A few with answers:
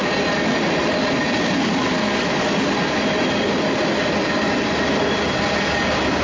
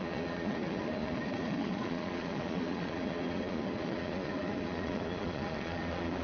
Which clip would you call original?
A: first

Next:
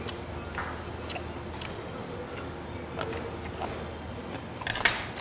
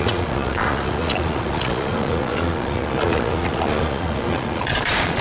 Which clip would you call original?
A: first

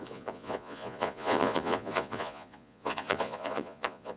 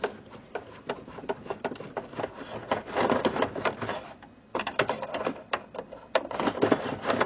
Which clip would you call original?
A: second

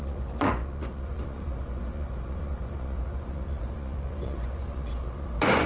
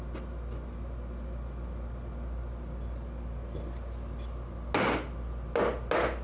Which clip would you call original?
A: second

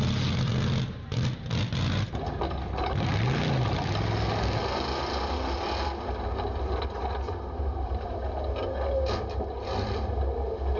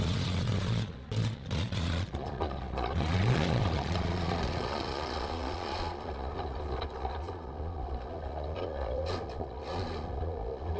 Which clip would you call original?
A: first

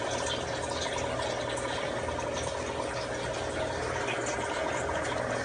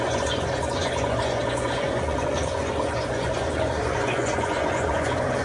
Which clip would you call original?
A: first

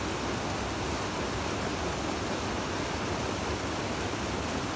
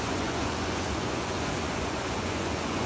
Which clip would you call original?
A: first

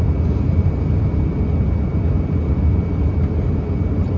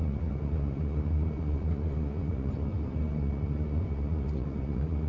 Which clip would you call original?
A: first